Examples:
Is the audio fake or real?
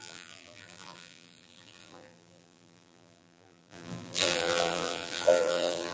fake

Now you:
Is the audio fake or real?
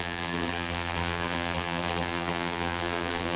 fake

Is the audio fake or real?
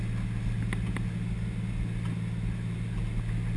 real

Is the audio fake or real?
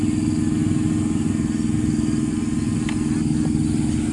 real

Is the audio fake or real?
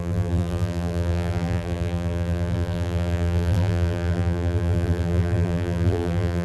fake